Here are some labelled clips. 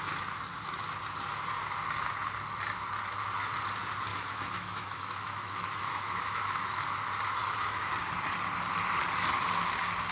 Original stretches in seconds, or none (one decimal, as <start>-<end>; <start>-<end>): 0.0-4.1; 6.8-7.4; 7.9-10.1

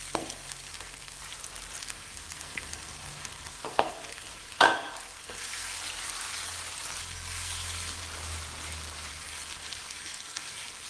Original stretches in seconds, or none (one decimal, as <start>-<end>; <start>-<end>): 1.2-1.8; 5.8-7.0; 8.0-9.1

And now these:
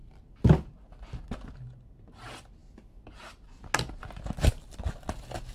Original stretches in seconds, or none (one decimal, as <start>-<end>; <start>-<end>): 0.0-5.5

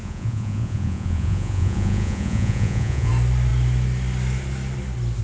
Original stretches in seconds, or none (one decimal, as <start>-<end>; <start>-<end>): 3.1-5.2

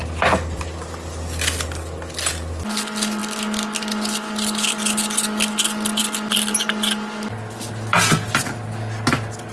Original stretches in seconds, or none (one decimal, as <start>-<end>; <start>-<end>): 0.0-9.5

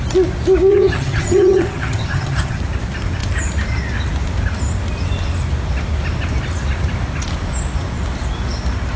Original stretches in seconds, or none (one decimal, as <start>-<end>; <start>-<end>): 0.0-0.7; 2.6-9.0

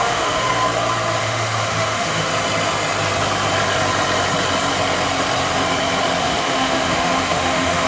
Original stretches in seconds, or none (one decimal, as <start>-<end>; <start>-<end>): 0.5-1.2; 2.3-6.2